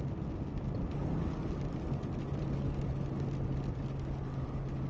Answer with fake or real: real